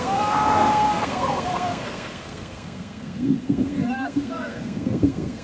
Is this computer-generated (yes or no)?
yes